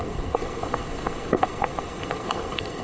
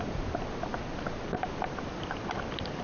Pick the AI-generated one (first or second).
first